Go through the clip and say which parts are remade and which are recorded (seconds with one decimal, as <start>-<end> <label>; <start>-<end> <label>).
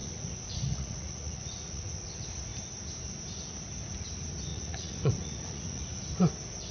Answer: 0.0-2.1 remade; 2.1-4.5 recorded; 4.5-6.0 remade; 6.0-6.7 recorded